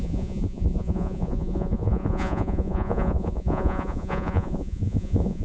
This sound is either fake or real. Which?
fake